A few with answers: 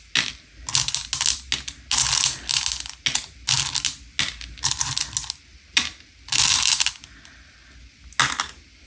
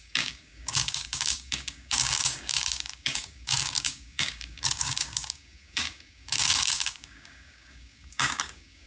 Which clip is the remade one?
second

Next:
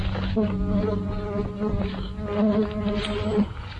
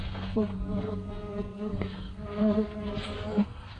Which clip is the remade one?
second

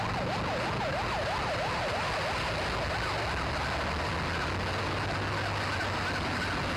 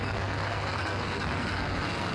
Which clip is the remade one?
second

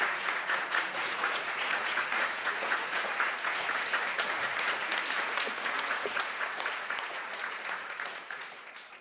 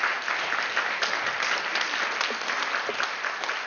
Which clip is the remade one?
first